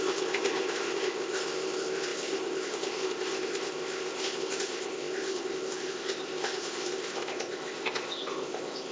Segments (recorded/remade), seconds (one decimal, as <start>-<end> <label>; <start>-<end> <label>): 0.0-8.9 remade